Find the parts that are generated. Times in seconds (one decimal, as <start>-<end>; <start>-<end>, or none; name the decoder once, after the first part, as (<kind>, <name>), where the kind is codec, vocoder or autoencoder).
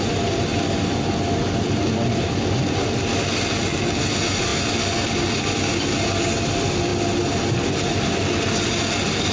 none